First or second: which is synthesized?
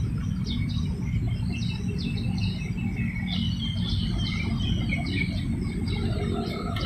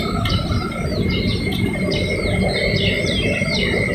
second